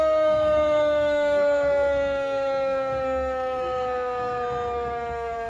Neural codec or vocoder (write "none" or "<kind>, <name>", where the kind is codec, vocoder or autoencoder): codec, SNAC